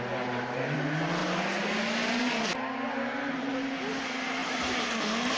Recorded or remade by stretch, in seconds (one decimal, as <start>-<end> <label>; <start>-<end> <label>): 0.0-4.4 recorded; 4.4-4.9 remade; 4.9-5.4 recorded